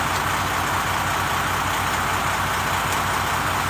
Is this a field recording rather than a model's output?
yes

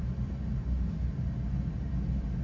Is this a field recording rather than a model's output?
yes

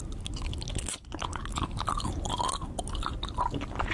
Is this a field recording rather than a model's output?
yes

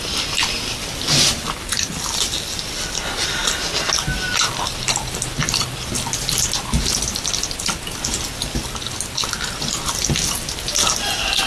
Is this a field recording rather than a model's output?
yes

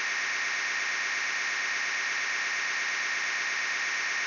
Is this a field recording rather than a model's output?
yes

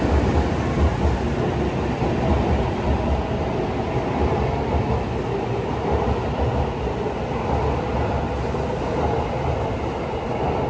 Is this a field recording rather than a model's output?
yes